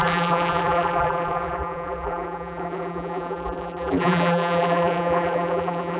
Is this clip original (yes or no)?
no